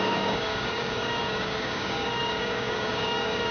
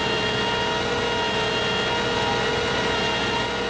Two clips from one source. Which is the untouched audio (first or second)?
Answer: second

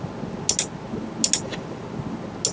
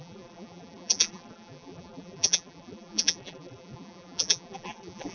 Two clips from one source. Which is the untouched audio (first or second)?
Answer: first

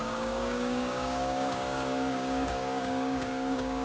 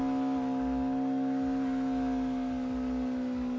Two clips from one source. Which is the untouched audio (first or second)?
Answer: second